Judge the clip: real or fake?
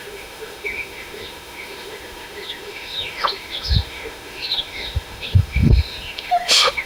fake